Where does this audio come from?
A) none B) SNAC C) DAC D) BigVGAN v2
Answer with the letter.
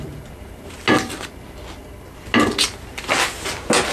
A